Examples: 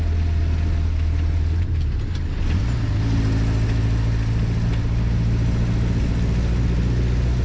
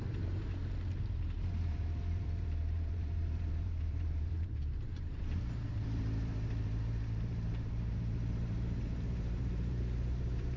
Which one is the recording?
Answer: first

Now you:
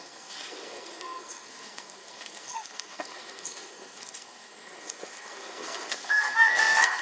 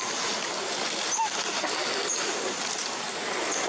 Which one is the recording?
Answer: second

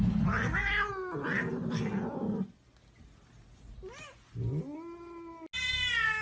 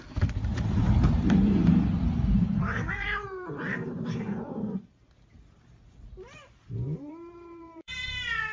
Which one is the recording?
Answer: first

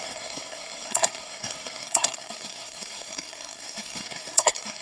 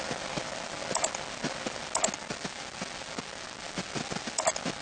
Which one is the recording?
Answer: second